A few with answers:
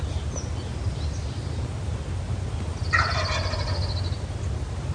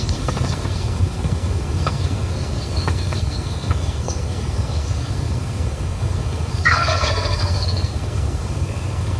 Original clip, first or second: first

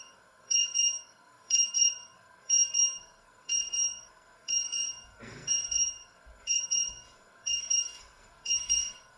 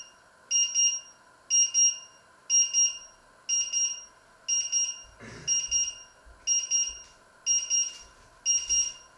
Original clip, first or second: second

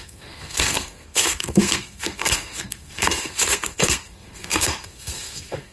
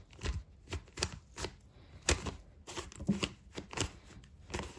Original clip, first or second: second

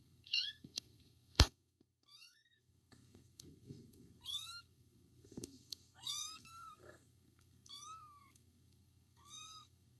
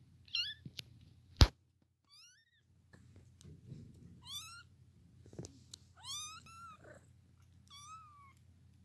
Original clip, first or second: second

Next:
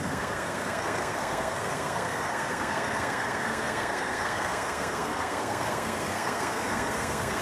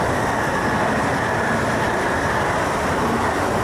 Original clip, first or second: second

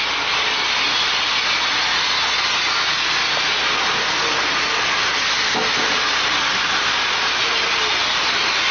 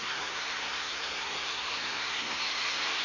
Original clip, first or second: first